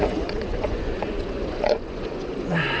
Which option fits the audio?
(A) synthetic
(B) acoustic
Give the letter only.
A